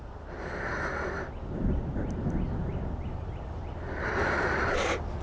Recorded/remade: recorded